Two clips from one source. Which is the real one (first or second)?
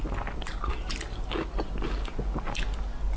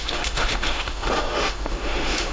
first